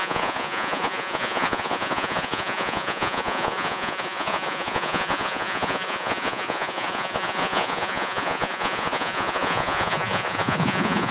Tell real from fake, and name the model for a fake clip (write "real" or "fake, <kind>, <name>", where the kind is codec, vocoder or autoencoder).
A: fake, vocoder, Vocos